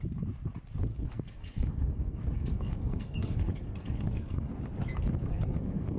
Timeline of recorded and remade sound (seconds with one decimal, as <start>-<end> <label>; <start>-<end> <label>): 0.0-0.9 recorded; 0.9-4.5 remade; 4.5-5.3 recorded; 5.3-6.0 remade